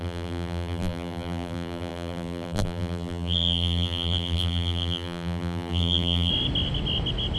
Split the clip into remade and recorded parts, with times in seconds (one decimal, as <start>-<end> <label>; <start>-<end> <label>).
0.0-6.3 remade; 6.3-7.4 recorded